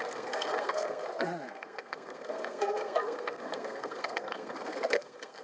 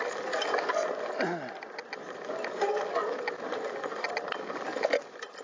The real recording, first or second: second